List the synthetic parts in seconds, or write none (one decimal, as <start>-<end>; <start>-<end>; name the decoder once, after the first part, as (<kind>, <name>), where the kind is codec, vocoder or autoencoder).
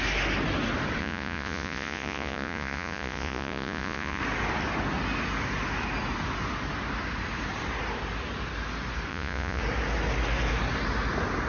1.0-4.2 (vocoder, Vocos); 9.1-9.6